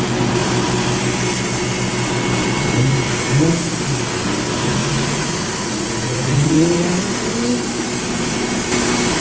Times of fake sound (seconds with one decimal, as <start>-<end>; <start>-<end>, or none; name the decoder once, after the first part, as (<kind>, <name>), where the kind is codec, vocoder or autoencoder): 4.8-7.0 (vocoder, Vocos)